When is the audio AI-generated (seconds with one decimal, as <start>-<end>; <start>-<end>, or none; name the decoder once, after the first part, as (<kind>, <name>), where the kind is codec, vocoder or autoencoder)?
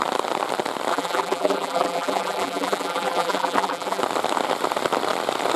0.9-4.0 (vocoder, BigVGAN v2)